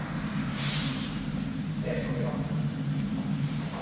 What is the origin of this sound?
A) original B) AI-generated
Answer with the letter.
B